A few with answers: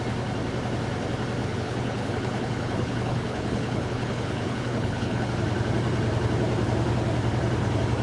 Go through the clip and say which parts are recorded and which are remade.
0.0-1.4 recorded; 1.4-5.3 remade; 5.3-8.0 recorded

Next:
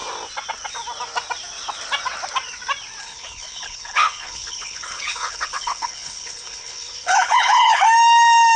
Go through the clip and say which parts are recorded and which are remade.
0.0-3.0 recorded; 3.0-7.8 remade; 7.8-8.6 recorded

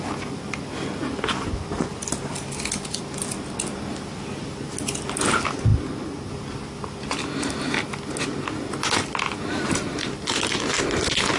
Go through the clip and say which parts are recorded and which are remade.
0.0-11.4 recorded

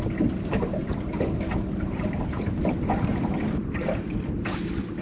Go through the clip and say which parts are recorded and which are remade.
0.0-5.0 recorded

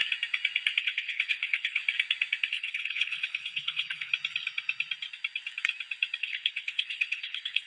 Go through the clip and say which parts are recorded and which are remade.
0.0-0.8 recorded; 0.8-1.8 remade; 1.8-2.5 recorded; 2.5-4.1 remade; 4.1-6.2 recorded; 6.2-7.7 remade

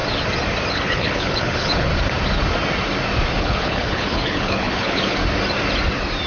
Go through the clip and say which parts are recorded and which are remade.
0.0-0.7 recorded; 0.7-1.9 remade; 1.9-3.4 recorded; 3.4-5.2 remade; 5.2-6.3 recorded